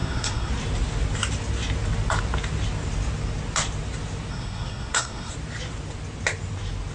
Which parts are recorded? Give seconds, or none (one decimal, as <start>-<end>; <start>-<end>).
0.5-4.3; 5.3-6.9